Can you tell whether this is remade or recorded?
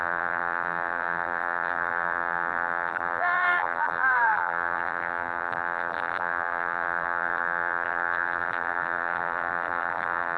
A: remade